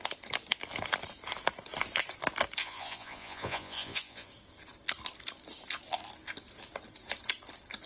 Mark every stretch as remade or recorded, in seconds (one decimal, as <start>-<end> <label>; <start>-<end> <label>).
0.0-2.6 recorded; 2.6-4.3 remade; 4.3-7.9 recorded